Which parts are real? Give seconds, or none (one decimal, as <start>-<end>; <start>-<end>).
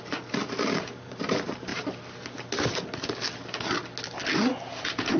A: 1.7-4.8